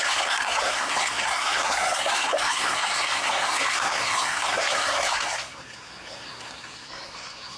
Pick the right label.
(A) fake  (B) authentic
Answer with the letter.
A